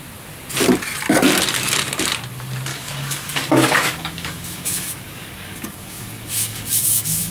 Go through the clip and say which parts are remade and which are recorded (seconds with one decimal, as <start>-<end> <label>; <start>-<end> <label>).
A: 0.0-2.7 recorded; 2.7-7.3 remade